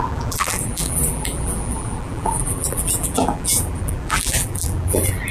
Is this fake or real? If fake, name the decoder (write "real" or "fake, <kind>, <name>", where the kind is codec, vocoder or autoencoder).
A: fake, vocoder, BigVGAN v2